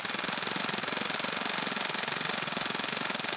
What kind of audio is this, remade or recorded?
recorded